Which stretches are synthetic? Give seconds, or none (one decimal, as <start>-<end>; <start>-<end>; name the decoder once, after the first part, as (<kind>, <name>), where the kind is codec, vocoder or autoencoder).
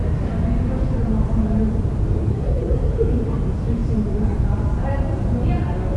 2.3-2.9 (codec, SNAC)